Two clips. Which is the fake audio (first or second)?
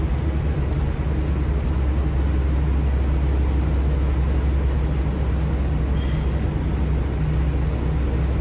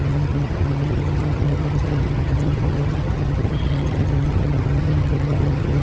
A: second